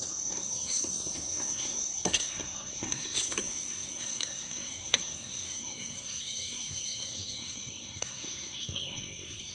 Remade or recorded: remade